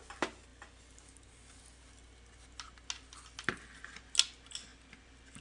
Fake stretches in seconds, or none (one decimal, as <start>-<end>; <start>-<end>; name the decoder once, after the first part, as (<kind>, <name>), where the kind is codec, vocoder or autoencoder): none